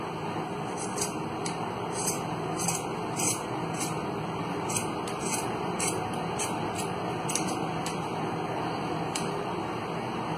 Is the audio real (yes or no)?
no